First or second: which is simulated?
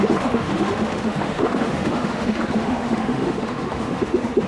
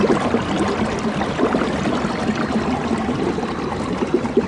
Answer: first